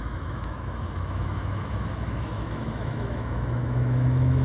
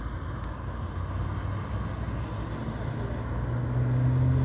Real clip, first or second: second